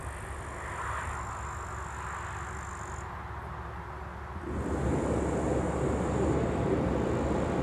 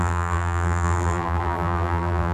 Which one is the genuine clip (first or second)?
first